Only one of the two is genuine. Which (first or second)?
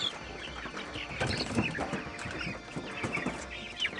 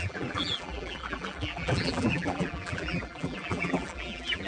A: first